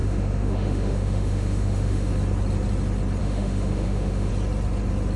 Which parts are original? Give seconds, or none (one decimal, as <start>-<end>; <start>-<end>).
2.1-3.2; 4.3-5.2